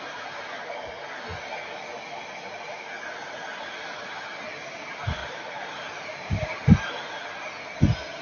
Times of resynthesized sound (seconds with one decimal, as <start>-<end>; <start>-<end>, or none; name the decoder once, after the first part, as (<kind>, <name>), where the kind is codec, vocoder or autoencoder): 5.2-6.9 (vocoder, BigVGAN v2)

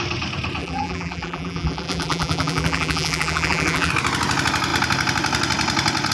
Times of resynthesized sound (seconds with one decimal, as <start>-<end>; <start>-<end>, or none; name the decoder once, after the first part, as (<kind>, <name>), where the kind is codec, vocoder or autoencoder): 0.6-3.9 (vocoder, BigVGAN v2)

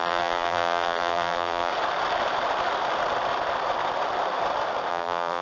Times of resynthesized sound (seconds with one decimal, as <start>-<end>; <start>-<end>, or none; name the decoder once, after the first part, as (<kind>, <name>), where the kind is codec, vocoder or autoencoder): 0.0-1.7 (vocoder, BigVGAN v2); 4.9-5.4